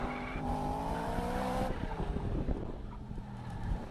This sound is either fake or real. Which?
fake